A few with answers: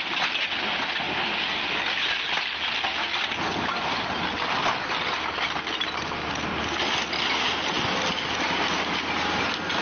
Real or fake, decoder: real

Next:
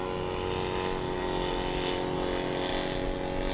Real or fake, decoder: real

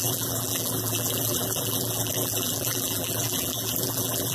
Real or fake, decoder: fake, vocoder, BigVGAN v2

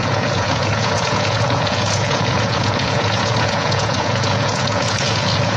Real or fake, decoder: fake, vocoder, Vocos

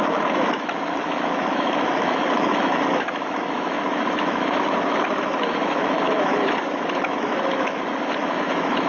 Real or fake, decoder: fake, autoencoder, DAC-VAE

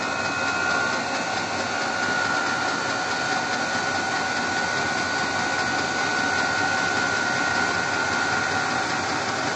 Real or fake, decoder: real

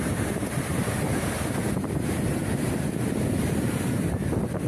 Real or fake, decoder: fake, vocoder, BigVGAN v2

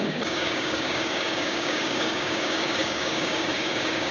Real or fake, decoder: fake, codec, DAC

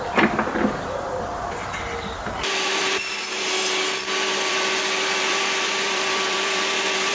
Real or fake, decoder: fake, vocoder, BigVGAN v2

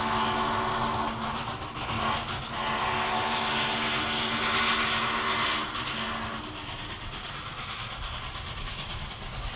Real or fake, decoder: real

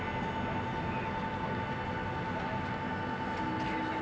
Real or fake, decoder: real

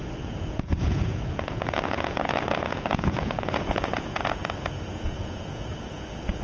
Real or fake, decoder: fake, vocoder, Vocos